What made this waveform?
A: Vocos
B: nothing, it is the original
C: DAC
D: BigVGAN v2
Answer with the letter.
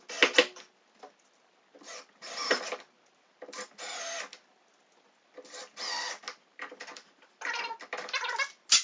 B